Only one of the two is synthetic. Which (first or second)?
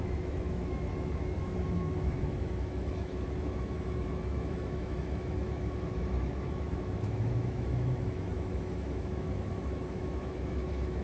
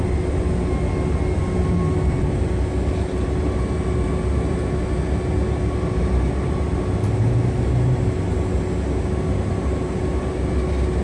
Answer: first